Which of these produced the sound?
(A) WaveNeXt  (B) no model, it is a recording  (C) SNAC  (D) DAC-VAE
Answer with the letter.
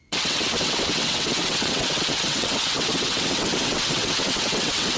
A